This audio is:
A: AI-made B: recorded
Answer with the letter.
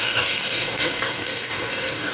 A